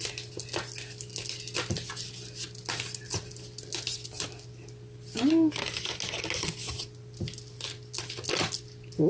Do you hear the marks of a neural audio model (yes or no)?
no